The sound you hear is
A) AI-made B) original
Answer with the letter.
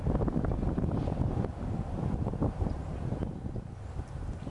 B